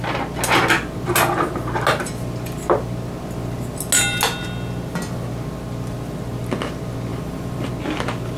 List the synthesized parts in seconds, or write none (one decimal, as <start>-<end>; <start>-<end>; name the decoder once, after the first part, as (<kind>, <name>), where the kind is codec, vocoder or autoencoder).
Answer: 7.1-7.7 (vocoder, BigVGAN v2)